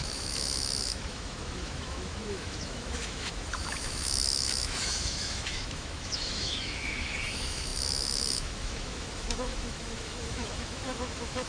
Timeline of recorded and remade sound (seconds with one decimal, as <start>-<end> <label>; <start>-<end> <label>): 0.0-11.5 remade